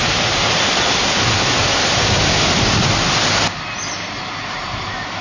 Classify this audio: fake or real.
real